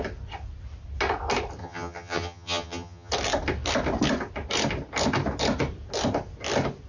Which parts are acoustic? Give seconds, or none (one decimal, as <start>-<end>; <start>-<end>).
0.0-1.6; 3.1-6.9